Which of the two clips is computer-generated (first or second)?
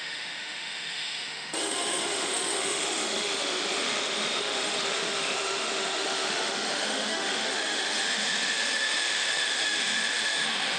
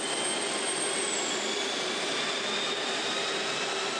first